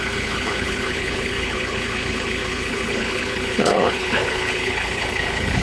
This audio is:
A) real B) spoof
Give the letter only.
B